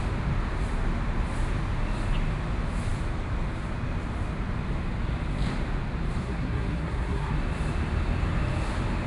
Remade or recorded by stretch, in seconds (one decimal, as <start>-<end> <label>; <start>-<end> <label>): 0.0-6.2 recorded; 6.2-7.3 remade; 7.3-9.1 recorded